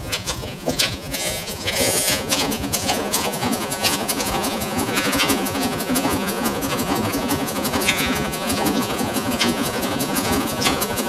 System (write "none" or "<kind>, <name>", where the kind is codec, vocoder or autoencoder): vocoder, Vocos